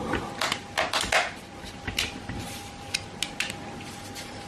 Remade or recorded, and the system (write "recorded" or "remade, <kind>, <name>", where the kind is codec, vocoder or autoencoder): recorded